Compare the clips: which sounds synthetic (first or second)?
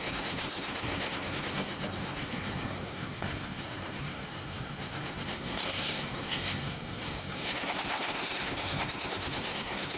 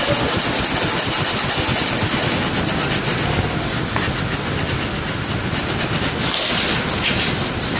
first